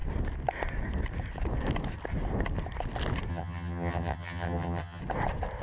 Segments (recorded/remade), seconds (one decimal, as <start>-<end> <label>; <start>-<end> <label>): 0.0-3.3 recorded; 3.3-5.0 remade; 5.0-5.6 recorded